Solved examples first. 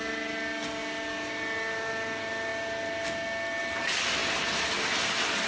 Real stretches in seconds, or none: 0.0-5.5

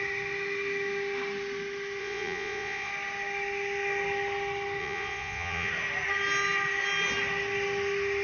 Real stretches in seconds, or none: 0.0-2.0; 2.9-4.8; 5.7-8.2

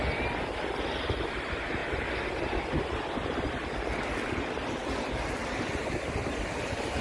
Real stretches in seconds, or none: 0.0-7.0

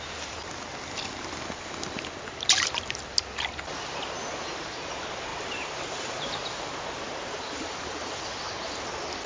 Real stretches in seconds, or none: 0.0-5.3; 8.2-9.3

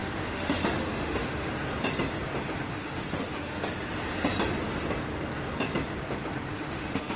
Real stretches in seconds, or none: 1.5-2.7; 3.6-6.5

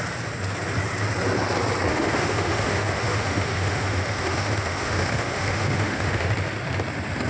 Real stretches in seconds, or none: 0.0-1.9; 6.3-7.3

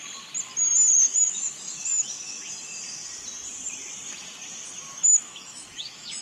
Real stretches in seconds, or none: 0.0-1.0; 2.5-5.1

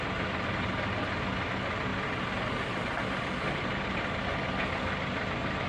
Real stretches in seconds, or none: 0.0-5.7